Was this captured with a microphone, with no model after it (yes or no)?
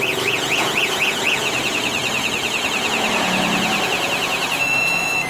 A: no